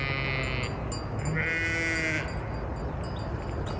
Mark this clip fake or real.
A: real